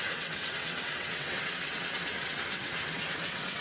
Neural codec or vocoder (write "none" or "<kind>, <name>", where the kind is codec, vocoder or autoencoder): vocoder, WaveNeXt